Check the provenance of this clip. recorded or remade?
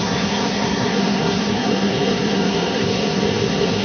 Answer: remade